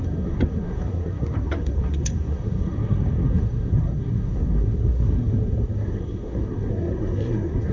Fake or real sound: fake